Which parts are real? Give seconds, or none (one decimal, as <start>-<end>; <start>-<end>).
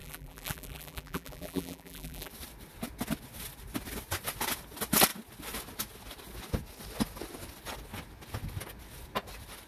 2.3-9.7